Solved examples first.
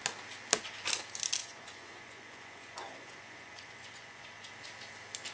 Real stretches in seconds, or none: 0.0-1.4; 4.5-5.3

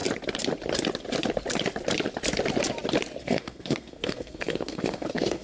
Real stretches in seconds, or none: 0.0-3.2

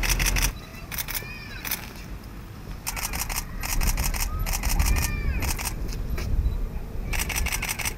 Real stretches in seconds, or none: 0.0-8.0